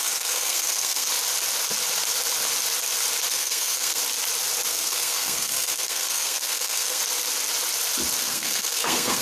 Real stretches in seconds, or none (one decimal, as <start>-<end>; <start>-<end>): 1.1-3.3; 4.0-4.7; 7.0-8.2